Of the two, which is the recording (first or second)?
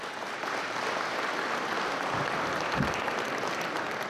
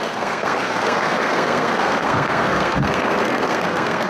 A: first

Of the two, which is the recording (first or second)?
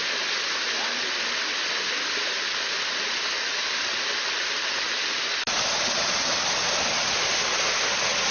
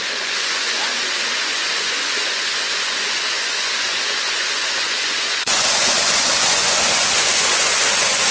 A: first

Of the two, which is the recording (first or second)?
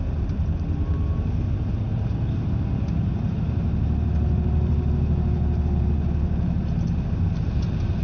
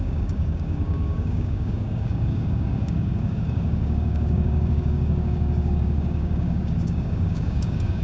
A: first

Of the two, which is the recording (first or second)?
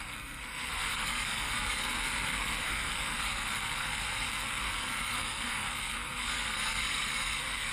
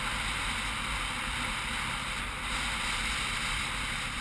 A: second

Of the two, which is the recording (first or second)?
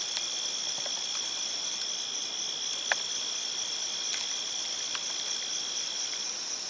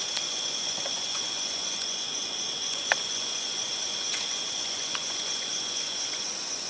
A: first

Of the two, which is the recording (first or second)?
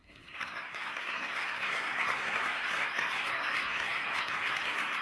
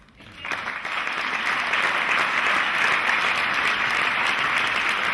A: second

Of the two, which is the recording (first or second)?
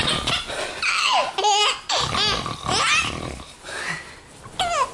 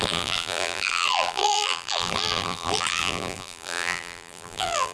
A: first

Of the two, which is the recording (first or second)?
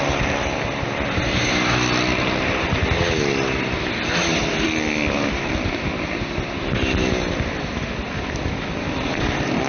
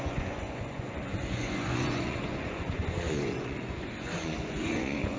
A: first